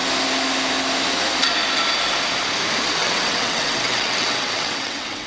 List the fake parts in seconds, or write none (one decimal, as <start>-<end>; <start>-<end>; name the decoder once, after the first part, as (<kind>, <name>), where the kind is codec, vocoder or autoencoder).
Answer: 3.0-5.3 (vocoder, WaveNeXt)